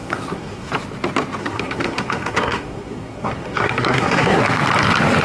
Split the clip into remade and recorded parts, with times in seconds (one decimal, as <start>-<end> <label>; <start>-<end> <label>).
0.0-0.7 remade; 0.7-1.4 recorded; 1.4-4.4 remade; 4.4-5.2 recorded